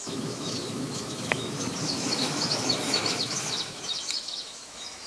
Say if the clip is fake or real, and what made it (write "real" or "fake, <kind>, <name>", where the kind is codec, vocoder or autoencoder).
fake, autoencoder, DAC-VAE